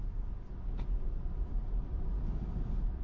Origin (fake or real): real